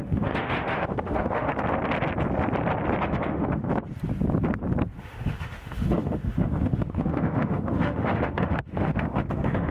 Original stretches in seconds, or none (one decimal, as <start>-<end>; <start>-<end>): 1.5-3.0; 3.7-5.0